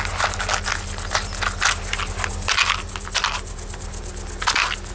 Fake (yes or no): no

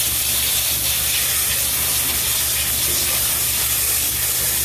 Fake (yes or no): no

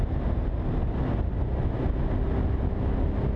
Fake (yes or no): no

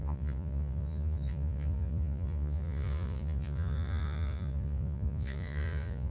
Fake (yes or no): yes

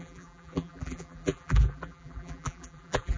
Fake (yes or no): yes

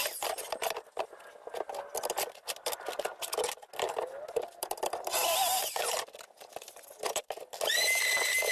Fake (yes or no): no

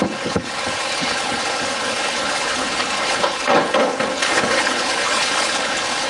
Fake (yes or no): yes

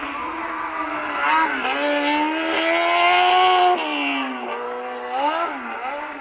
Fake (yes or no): no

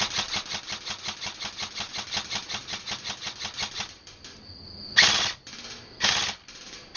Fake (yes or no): no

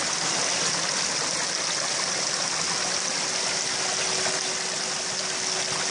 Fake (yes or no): no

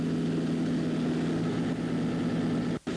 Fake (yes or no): no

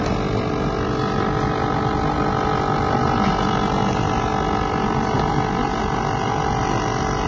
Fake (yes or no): no